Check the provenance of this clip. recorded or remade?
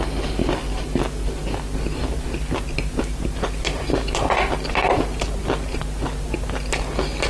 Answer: recorded